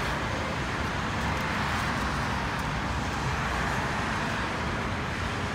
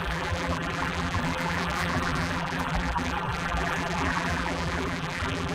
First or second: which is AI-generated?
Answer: second